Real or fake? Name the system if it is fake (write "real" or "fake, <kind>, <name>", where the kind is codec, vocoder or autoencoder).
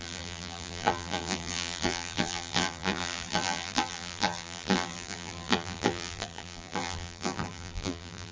fake, vocoder, BigVGAN v2